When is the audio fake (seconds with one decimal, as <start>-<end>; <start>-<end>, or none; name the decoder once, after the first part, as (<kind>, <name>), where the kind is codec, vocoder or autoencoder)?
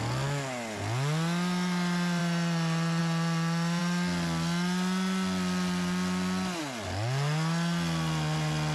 none